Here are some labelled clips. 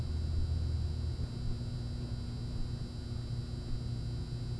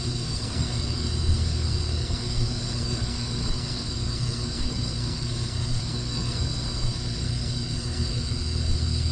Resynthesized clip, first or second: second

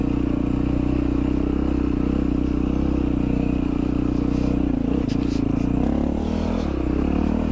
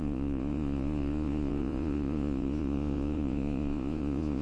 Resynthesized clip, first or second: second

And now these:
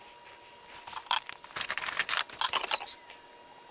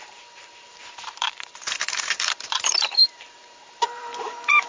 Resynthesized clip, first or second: second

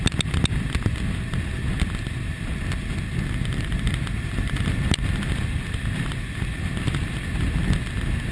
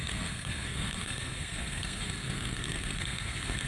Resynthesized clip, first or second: second